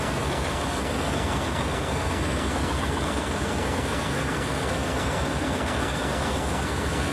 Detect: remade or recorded remade